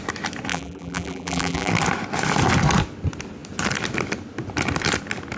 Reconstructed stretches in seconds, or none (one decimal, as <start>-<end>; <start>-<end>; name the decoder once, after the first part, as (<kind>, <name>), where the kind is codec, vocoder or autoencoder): 0.5-1.7 (vocoder, BigVGAN v2)